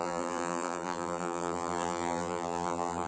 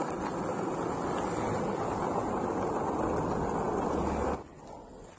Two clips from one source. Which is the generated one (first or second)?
first